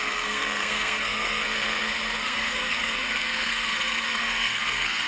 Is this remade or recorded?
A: remade